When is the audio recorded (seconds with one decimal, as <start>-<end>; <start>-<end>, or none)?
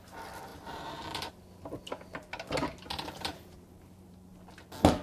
0.0-0.5; 1.3-3.3; 4.3-5.0